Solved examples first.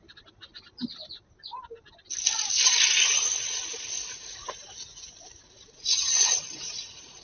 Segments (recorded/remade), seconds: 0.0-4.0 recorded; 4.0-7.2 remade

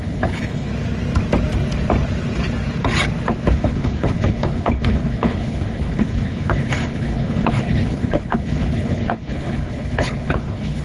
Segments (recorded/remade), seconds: 0.0-0.7 remade; 0.7-3.5 recorded; 3.5-10.8 remade

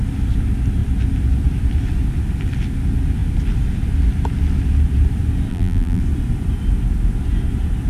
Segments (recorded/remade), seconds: 0.0-5.5 recorded; 5.5-6.0 remade; 6.0-7.9 recorded

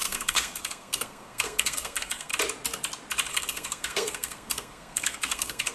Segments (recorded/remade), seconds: 0.0-2.3 remade; 2.3-3.3 recorded; 3.3-5.7 remade

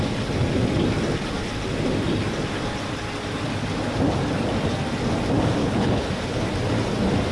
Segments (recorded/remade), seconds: 0.0-5.6 recorded; 5.6-6.1 remade; 6.1-7.3 recorded

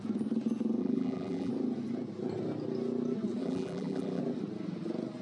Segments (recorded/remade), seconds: 0.0-0.8 recorded; 0.8-1.5 remade; 1.5-3.4 recorded; 3.4-4.2 remade; 4.2-5.2 recorded

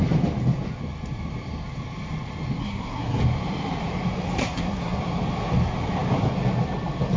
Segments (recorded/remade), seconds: 0.0-2.6 recorded; 2.6-3.2 remade; 3.2-4.4 recorded; 4.4-5.0 remade; 5.0-7.2 recorded

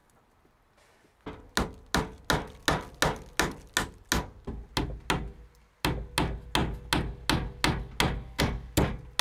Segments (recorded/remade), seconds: 0.0-9.2 recorded